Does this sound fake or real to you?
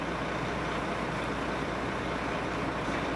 real